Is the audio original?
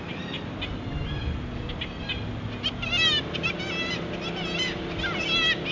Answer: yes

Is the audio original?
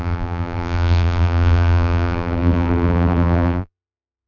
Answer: no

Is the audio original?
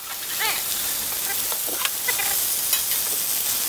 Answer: yes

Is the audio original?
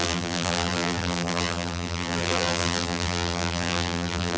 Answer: no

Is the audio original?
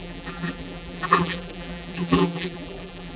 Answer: no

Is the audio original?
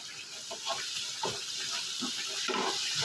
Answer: no